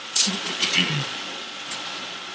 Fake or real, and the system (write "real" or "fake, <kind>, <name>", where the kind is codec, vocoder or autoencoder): fake, vocoder, Vocos